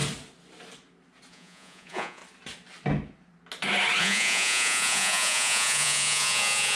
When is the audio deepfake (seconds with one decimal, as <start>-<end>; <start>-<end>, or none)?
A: 1.3-2.2; 4.0-6.8